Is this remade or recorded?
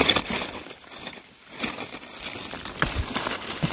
recorded